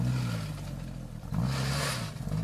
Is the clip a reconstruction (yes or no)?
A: no